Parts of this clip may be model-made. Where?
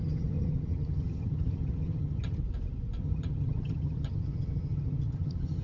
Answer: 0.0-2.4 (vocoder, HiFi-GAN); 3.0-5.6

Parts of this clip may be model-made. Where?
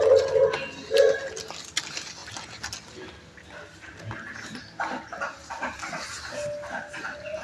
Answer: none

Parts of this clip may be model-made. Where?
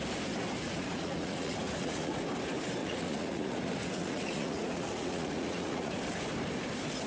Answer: 0.6-2.2 (vocoder, Vocos); 2.8-6.0